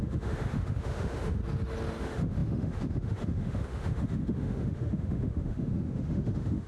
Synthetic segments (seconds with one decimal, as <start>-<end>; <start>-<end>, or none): 0.0-1.4; 2.0-6.7